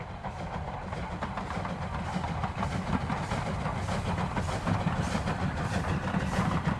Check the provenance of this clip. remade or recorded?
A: recorded